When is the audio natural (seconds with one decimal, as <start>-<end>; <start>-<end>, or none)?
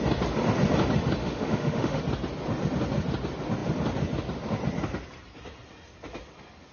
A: 0.0-1.2; 2.0-6.7